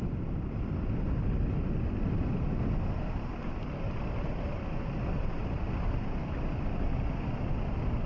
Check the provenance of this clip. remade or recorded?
recorded